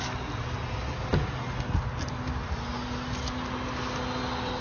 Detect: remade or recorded recorded